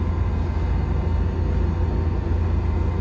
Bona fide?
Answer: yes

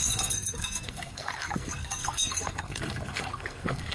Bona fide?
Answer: no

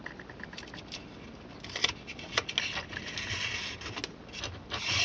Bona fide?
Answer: yes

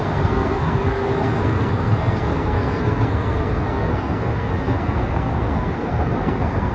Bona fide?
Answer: no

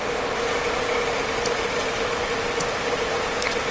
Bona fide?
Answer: yes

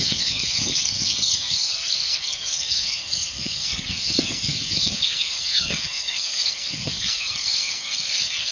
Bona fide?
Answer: no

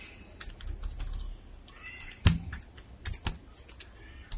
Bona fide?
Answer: yes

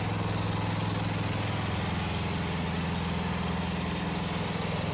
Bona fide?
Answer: yes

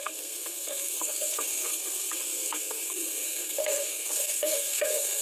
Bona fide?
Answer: no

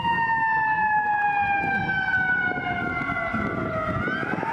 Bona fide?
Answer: yes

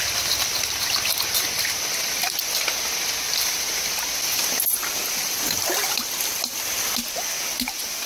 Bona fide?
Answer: yes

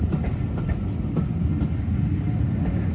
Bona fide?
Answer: yes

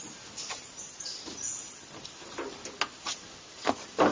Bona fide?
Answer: yes